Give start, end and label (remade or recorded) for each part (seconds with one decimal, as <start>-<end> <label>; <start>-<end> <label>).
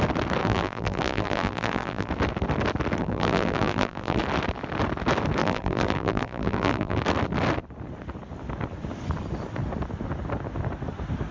0.0-0.4 recorded; 0.4-2.1 remade; 2.1-3.0 recorded; 3.0-4.2 remade; 4.2-5.4 recorded; 5.4-7.0 remade; 7.0-11.3 recorded